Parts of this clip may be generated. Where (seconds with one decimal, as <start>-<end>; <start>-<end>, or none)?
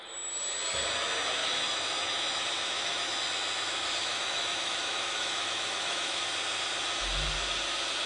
1.4-3.1; 4.1-6.2